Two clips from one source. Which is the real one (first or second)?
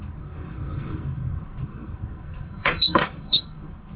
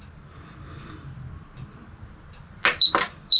second